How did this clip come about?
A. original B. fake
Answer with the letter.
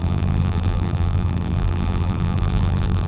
B